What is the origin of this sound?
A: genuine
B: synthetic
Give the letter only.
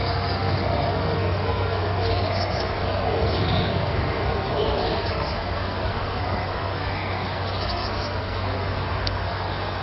B